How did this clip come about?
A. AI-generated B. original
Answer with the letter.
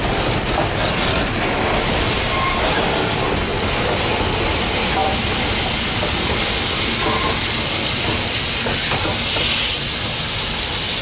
B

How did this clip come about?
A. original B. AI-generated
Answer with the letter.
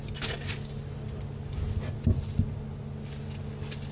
A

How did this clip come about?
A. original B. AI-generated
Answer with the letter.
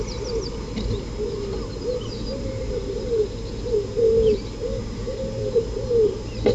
A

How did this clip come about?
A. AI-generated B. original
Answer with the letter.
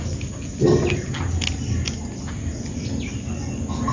B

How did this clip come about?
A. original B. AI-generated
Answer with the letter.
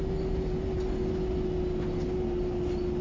A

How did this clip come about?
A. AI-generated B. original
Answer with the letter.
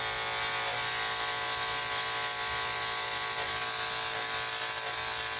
B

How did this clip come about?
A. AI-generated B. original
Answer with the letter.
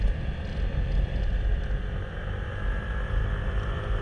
A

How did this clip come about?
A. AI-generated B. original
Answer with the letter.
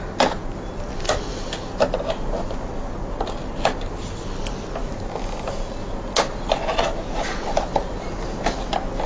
B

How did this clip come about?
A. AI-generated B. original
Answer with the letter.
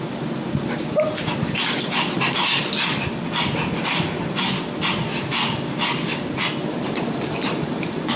B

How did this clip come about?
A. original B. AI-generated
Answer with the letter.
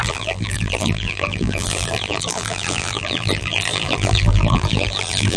B